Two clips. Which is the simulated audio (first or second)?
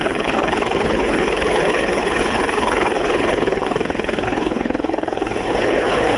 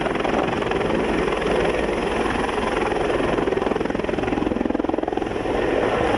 first